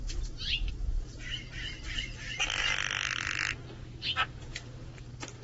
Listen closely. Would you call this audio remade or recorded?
recorded